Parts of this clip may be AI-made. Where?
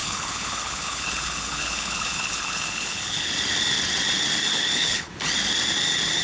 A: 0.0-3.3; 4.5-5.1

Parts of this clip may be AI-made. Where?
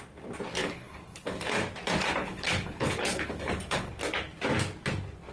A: 0.6-1.6; 2.2-3.9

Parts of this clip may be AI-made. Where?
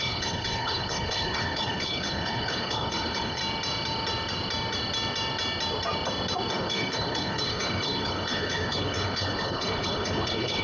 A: 0.0-3.4; 6.5-10.6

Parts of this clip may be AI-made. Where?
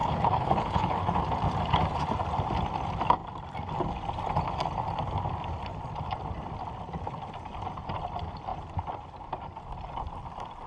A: 0.0-1.2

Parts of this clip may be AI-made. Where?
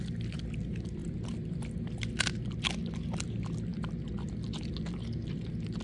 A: none